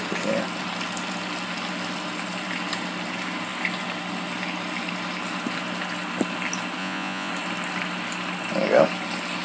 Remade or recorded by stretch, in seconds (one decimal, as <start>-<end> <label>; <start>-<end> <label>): 0.0-6.8 recorded; 6.8-7.3 remade; 7.3-9.4 recorded